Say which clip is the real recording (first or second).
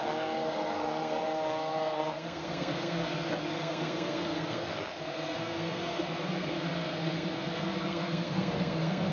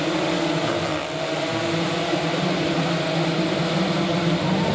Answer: second